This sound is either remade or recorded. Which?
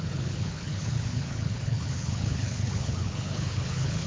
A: remade